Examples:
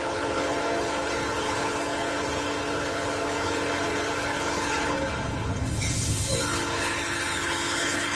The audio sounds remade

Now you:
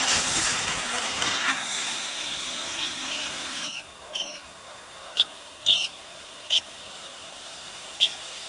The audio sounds remade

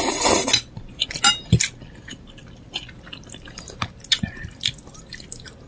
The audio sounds recorded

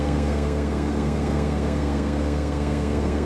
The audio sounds remade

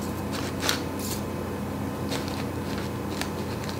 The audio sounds recorded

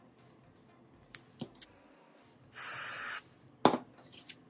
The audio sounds recorded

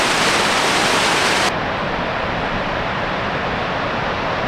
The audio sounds remade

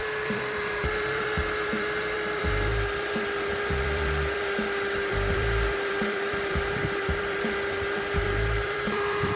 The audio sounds remade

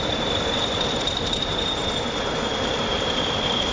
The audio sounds recorded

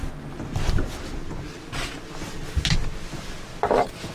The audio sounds recorded